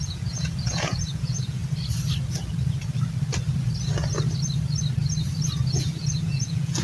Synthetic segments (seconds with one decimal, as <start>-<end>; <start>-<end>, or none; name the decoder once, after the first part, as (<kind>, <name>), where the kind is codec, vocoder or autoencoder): 0.0-1.6 (vocoder, Vocos); 5.7-6.8